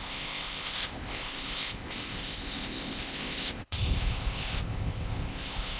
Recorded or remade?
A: remade